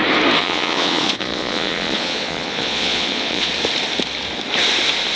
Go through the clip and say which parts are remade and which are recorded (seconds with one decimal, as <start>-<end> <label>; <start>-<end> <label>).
0.0-0.4 recorded; 0.4-3.5 remade; 3.5-5.2 recorded